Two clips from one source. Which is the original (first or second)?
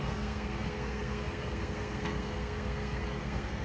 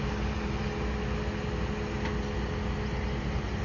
second